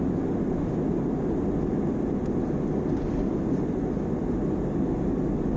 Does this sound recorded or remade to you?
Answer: recorded